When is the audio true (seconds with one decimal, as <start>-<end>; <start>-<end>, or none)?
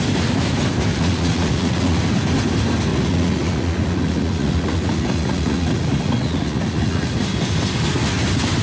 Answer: 0.0-0.9; 2.0-2.9; 7.1-8.6